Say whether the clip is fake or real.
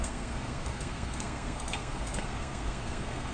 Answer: fake